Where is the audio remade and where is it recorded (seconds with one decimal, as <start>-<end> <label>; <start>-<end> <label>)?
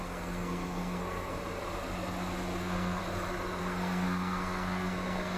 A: 0.0-1.4 remade; 1.4-2.6 recorded; 2.6-3.0 remade; 3.0-3.6 recorded; 3.6-5.4 remade